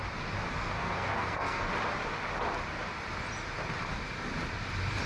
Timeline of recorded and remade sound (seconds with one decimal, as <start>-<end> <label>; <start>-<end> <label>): 0.0-0.5 recorded; 0.5-1.7 remade; 1.7-5.1 recorded